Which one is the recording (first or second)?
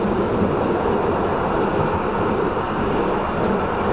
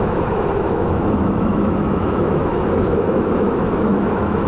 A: first